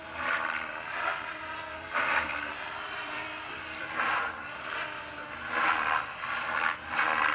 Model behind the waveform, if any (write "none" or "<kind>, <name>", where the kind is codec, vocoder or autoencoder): vocoder, BigVGAN v2